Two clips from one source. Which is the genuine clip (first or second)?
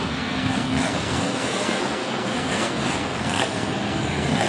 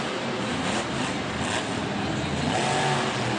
second